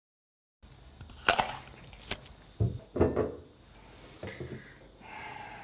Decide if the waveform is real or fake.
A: real